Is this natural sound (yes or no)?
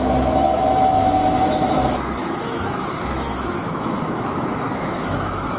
no